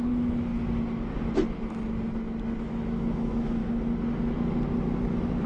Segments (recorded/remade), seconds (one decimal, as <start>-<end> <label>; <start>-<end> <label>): 0.0-0.5 remade; 0.5-2.6 recorded; 2.6-3.6 remade; 3.6-5.5 recorded